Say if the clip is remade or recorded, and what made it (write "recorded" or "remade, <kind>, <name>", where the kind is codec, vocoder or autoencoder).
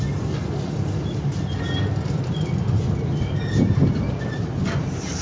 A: recorded